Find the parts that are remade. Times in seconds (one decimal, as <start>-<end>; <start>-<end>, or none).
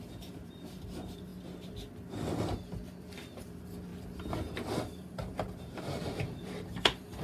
0.0-1.3; 3.0-3.9; 4.8-7.2